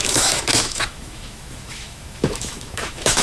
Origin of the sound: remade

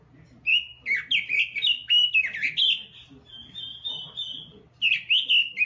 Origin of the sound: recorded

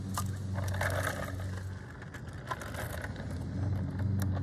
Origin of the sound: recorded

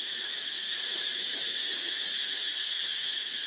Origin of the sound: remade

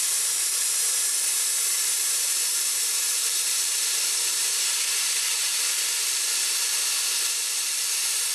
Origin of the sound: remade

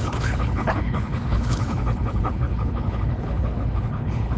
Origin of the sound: remade